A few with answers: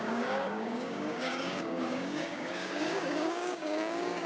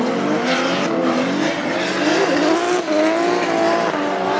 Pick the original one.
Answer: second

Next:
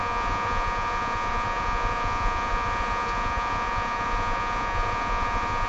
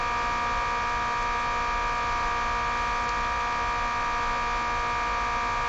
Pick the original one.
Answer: second